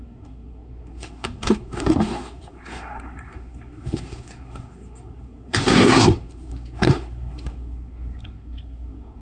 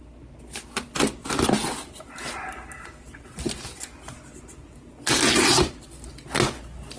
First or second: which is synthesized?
first